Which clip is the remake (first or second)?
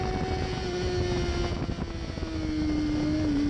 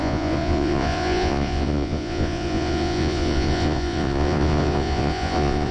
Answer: second